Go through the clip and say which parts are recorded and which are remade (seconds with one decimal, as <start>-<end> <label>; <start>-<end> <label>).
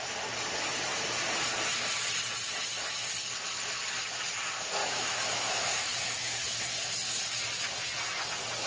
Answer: 0.0-4.8 recorded; 4.8-6.6 remade; 6.6-8.7 recorded